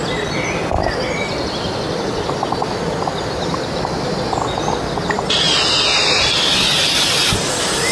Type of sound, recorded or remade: recorded